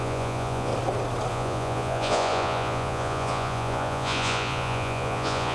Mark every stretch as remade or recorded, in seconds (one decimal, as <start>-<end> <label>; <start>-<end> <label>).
0.0-0.7 remade; 0.7-1.3 recorded; 1.3-5.5 remade